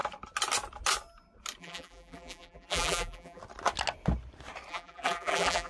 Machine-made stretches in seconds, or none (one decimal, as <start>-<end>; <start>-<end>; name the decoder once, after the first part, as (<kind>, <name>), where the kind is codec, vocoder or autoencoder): 1.6-3.4 (vocoder, BigVGAN v2); 4.7-5.7